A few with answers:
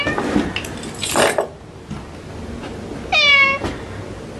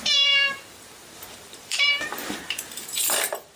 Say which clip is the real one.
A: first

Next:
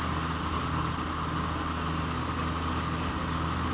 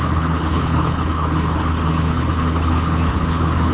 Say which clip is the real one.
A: first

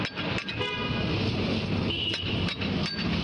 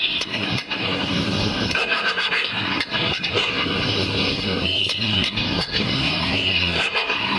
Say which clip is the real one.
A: first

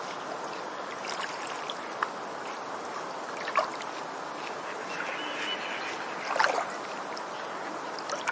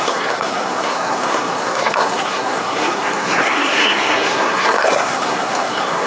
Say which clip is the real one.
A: first